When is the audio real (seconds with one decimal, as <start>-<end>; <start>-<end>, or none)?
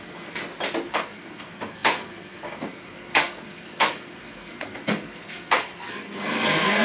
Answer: 0.4-0.9